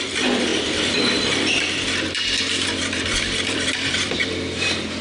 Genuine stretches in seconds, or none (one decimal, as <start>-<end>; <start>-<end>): none